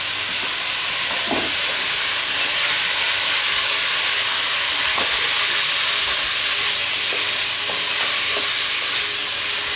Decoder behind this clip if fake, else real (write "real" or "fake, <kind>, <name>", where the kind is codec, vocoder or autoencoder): real